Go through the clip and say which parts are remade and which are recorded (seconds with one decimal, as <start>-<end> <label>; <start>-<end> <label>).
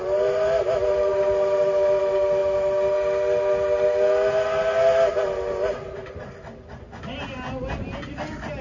0.0-8.6 recorded